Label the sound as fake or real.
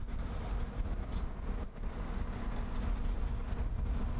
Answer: real